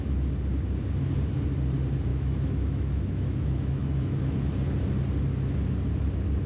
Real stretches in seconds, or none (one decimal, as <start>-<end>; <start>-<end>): 0.0-2.1; 4.5-6.5